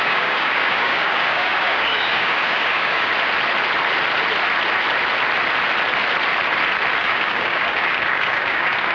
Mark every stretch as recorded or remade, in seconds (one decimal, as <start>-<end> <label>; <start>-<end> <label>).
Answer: 0.0-3.1 remade; 3.1-7.0 recorded; 7.0-8.9 remade